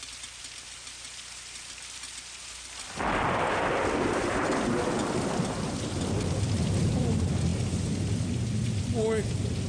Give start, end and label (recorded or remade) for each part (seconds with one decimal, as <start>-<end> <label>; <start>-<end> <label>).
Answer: 0.0-9.7 recorded